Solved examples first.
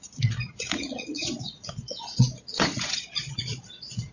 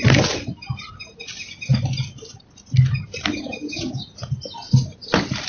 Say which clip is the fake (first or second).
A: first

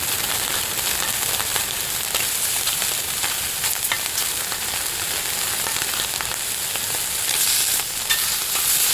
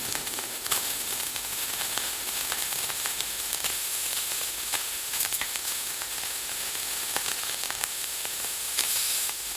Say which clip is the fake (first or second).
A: second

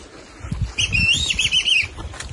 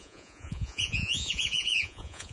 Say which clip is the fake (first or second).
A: second